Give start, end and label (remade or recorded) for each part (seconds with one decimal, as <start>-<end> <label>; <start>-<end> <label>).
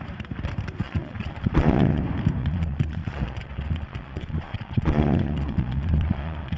0.0-0.8 recorded; 0.8-2.0 remade; 2.0-2.4 recorded; 2.4-6.6 remade